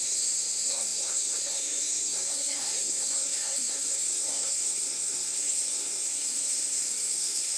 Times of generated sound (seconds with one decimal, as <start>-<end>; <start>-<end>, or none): 0.0-7.6